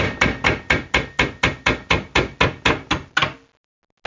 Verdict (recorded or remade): recorded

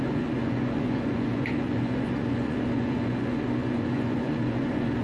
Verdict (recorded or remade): remade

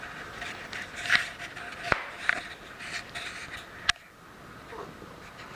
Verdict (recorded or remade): recorded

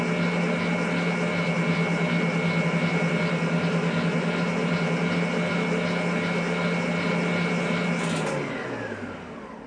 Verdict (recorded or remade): recorded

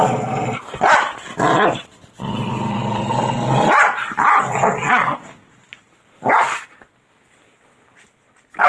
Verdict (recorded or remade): recorded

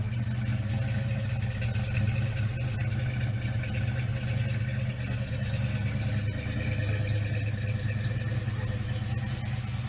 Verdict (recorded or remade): recorded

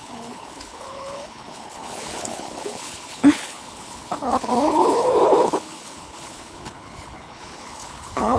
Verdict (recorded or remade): remade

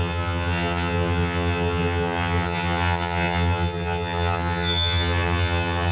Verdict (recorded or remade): remade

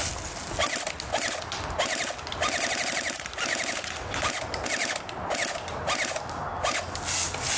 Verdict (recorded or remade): recorded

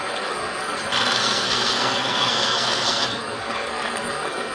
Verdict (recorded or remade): remade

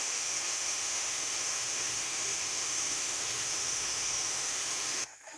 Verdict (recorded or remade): remade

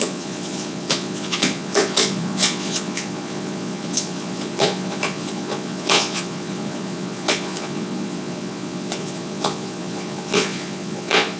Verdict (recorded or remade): remade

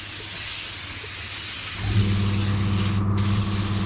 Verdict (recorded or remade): recorded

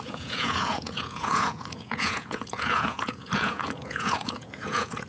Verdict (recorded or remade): remade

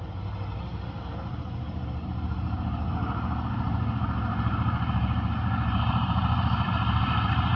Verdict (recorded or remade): remade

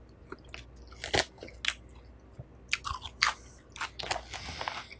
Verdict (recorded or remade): recorded